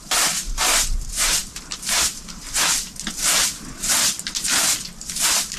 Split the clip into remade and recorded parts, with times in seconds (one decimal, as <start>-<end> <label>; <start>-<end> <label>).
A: 0.0-5.6 recorded